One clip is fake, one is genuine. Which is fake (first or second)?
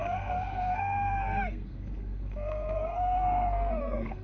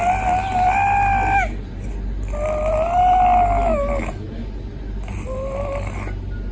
first